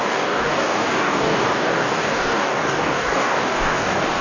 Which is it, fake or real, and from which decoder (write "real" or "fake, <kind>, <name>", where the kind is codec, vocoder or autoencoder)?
fake, codec, DAC